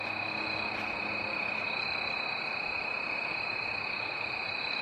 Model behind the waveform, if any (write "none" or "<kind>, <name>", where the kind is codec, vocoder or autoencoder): autoencoder, DAC-VAE